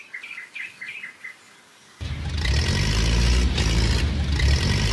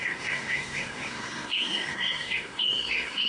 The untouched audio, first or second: first